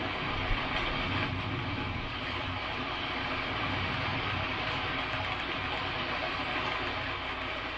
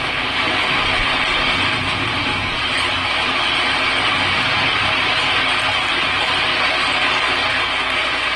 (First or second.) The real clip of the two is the second